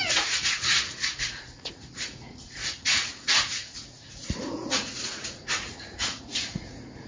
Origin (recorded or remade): remade